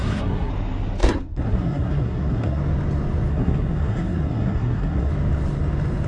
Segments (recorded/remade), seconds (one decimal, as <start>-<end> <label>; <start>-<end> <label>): 0.0-0.5 remade; 0.5-1.0 recorded; 1.0-2.6 remade; 2.6-3.3 recorded; 3.3-5.1 remade; 5.1-6.1 recorded